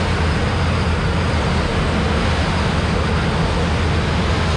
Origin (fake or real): real